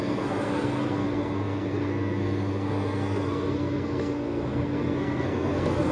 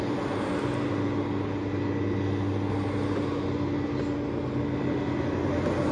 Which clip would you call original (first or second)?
second